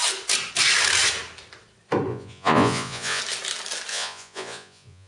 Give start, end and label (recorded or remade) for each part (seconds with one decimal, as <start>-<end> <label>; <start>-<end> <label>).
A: 0.0-2.1 recorded; 2.1-3.2 remade; 3.2-3.9 recorded; 3.9-5.1 remade